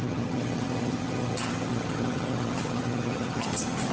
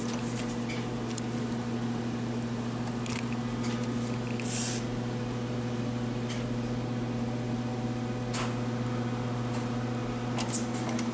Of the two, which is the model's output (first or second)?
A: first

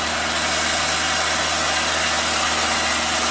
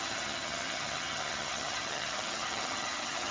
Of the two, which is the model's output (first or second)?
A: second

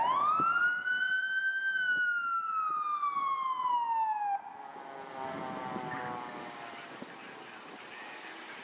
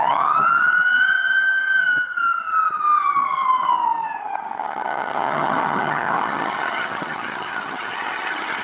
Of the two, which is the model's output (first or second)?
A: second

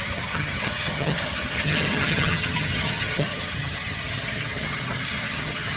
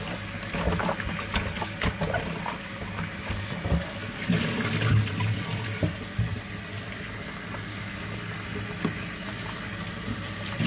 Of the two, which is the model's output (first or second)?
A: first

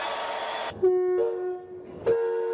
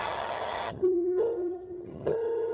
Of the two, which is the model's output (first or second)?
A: second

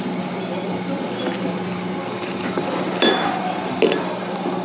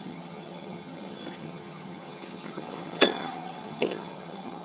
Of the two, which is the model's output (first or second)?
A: second